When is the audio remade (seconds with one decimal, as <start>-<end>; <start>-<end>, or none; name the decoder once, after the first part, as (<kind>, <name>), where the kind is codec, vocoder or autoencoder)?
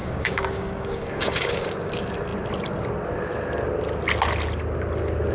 0.0-1.7 (codec, DAC)